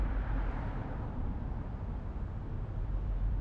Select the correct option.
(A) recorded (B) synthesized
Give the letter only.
B